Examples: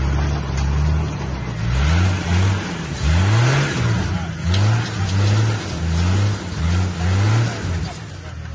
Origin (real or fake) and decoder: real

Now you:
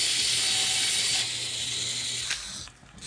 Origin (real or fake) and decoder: real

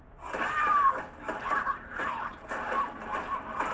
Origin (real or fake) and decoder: real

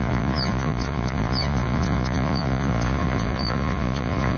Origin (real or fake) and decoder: fake, vocoder, Vocos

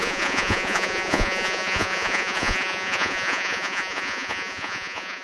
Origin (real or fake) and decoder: fake, vocoder, Vocos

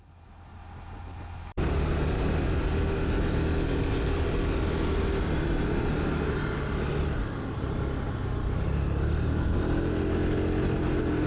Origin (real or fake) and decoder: real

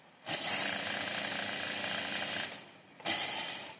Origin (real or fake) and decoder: real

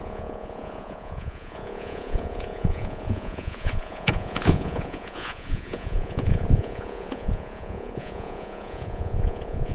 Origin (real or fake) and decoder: fake, vocoder, Vocos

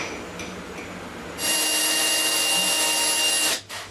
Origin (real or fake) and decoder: real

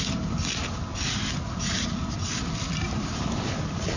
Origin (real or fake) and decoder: real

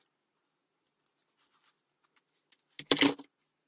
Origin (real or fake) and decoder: real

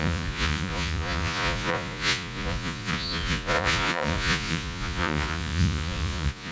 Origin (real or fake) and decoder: fake, vocoder, Vocos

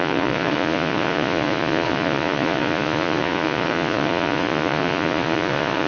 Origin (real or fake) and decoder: fake, vocoder, Vocos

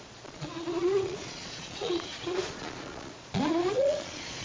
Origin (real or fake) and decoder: fake, vocoder, Vocos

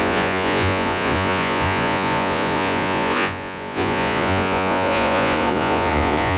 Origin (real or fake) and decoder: fake, vocoder, Vocos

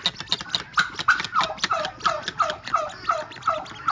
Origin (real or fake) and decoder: real